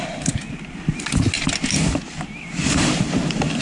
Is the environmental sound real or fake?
real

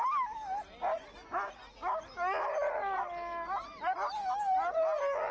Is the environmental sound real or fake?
real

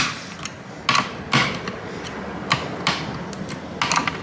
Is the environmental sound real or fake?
real